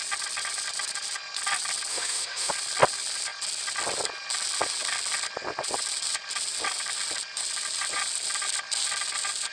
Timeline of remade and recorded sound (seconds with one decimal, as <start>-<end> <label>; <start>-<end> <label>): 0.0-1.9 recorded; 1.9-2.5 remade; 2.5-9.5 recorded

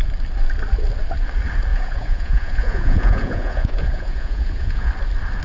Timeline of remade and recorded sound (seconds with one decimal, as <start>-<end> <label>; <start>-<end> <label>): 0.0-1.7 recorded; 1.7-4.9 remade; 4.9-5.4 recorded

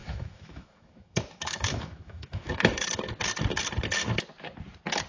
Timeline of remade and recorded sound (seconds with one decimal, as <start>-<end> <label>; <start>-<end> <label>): 0.0-2.9 remade; 2.9-5.1 recorded